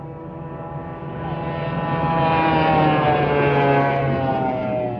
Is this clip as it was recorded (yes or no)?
yes